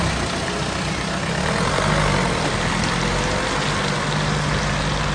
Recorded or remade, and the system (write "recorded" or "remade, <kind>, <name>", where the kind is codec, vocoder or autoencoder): recorded